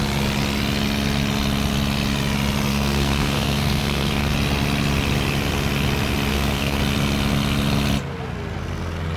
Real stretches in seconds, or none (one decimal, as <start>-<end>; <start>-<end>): 0.0-2.7; 4.3-6.3; 6.8-9.2